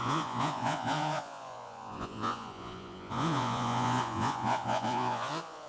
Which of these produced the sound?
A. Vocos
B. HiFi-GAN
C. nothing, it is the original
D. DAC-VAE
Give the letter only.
A